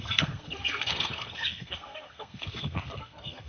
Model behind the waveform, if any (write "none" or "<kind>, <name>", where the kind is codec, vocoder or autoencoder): codec, SNAC